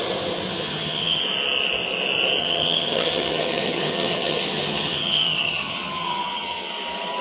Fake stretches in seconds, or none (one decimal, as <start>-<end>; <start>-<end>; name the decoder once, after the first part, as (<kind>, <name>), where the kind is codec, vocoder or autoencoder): 0.5-1.2 (vocoder, HiFi-GAN); 2.4-6.7